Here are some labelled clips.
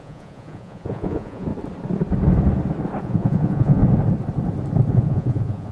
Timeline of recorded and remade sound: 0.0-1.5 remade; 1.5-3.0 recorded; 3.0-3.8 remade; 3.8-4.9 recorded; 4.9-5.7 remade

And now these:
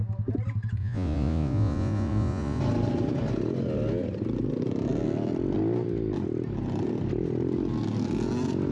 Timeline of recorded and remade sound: 0.0-0.8 recorded; 0.8-2.6 remade; 2.6-8.7 recorded